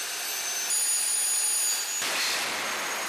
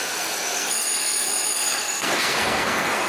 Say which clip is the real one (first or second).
first